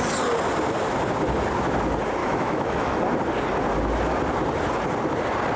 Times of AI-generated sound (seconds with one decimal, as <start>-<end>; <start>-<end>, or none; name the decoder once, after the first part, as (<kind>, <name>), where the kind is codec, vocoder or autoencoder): 2.2-3.0 (autoencoder, DAC-VAE)

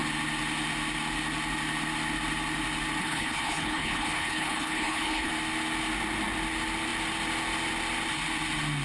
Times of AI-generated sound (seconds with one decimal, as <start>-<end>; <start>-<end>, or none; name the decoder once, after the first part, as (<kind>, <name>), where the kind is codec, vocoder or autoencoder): 3.0-5.3 (codec, HILCodec)

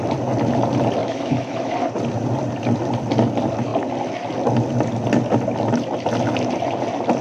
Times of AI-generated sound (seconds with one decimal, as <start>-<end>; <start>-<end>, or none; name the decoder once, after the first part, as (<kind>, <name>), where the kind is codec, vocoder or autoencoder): 1.0-1.7 (autoencoder, DAC-VAE)